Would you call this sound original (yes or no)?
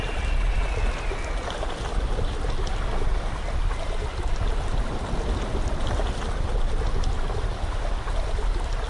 yes